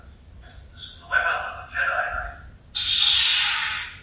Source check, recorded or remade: recorded